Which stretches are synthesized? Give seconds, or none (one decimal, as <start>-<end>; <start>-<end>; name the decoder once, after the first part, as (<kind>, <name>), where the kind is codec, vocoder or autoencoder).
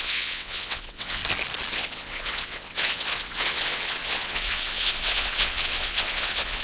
0.0-1.2 (vocoder, WaveNeXt); 1.7-6.6